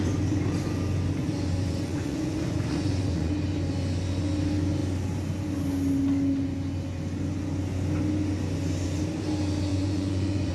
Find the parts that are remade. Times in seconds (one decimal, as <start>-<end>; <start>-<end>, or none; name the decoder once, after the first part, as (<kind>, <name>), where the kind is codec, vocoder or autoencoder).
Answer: 1.2-3.3 (vocoder, Vocos); 9.7-10.5